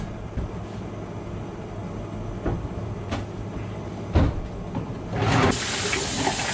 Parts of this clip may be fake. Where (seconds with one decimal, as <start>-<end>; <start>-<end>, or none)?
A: none